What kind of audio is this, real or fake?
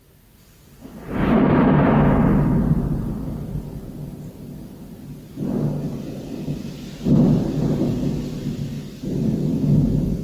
real